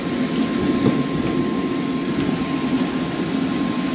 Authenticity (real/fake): real